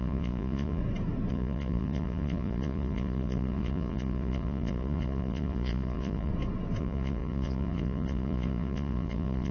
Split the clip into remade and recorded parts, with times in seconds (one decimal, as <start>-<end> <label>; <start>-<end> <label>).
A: 0.0-0.8 remade; 0.8-1.3 recorded; 1.3-6.3 remade; 6.3-6.8 recorded; 6.8-9.5 remade